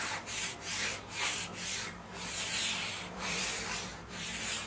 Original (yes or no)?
no